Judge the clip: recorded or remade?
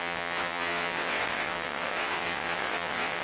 remade